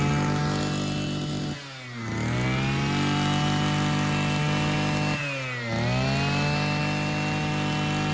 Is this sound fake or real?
real